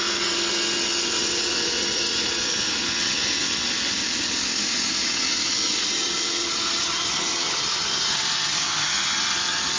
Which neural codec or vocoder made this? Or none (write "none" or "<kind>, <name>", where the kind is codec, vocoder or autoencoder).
vocoder, HiFi-GAN